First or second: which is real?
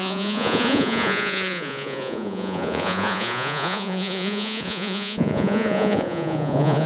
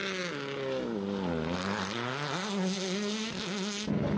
second